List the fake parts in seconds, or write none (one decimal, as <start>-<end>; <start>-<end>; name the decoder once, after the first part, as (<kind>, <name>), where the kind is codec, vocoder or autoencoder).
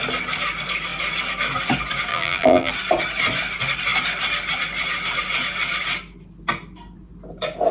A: 2.1-2.7 (vocoder, BigVGAN v2)